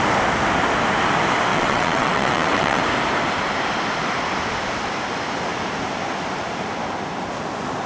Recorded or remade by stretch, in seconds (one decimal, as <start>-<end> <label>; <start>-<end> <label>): 0.0-1.5 recorded; 1.5-2.8 remade; 2.8-7.9 recorded